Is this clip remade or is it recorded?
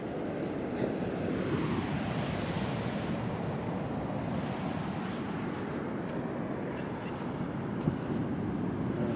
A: recorded